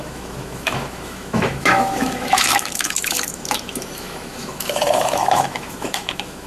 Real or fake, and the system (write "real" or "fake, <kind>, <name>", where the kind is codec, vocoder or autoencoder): fake, autoencoder, DAC-VAE